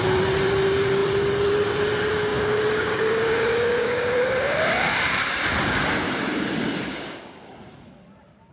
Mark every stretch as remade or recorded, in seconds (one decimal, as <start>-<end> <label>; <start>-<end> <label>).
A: 0.0-2.3 recorded; 2.3-4.2 remade; 4.2-6.9 recorded; 6.9-7.5 remade; 7.5-8.5 recorded